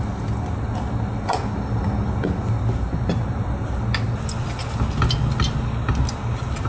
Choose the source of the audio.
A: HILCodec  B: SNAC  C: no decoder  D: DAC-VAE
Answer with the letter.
C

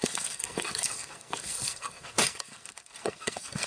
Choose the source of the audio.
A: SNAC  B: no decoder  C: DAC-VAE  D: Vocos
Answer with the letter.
A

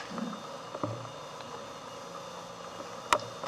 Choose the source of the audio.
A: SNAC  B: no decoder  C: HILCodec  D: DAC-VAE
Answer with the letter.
B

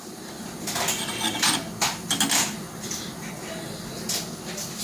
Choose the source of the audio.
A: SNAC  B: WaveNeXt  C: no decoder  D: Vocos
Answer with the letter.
C